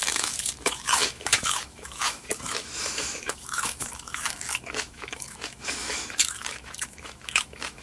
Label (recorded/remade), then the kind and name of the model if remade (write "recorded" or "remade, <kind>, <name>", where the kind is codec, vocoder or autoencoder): remade, autoencoder, DAC-VAE